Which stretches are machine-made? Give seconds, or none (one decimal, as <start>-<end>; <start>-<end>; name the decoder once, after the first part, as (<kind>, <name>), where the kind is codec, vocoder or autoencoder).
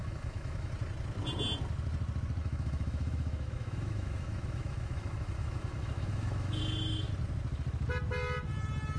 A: 0.0-0.7 (autoencoder, DAC-VAE); 2.4-6.6